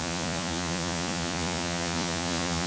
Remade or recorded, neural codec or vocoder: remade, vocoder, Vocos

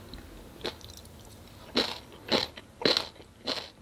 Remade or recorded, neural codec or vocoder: recorded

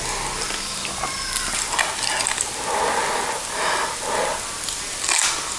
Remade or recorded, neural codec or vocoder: recorded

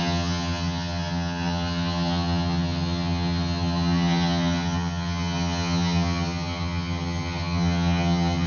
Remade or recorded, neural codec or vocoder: remade, vocoder, HiFi-GAN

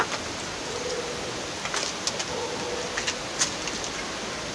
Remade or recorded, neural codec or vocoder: recorded